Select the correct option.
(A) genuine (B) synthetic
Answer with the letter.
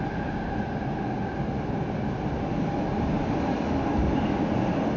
A